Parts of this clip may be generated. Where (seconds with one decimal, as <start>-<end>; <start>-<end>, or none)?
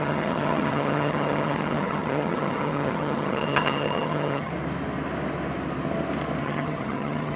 0.0-4.5; 6.4-7.4